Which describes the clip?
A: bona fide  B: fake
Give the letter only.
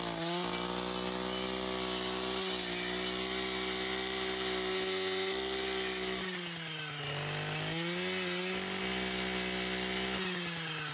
A